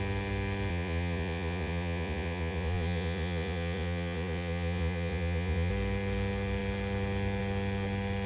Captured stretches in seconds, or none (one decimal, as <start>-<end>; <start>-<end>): 0.0-0.7; 5.7-8.3